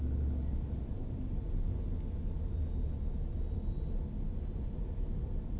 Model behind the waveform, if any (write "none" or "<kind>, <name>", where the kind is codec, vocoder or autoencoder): none